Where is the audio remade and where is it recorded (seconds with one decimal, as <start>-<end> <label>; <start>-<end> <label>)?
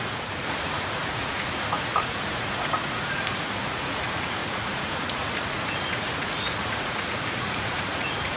0.0-8.4 remade